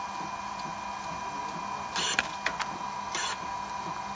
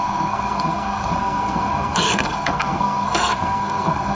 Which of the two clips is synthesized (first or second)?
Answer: second